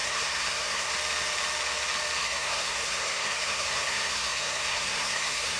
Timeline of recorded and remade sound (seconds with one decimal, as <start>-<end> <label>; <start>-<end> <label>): 0.0-0.9 remade; 0.9-2.2 recorded; 2.2-5.6 remade